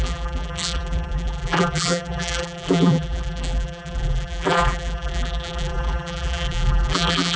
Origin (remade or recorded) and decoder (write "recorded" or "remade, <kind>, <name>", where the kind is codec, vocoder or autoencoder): remade, vocoder, BigVGAN v2